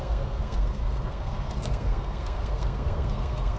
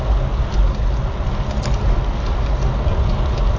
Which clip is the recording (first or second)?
second